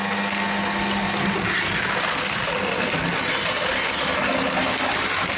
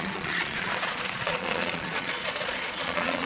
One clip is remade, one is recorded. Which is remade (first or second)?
second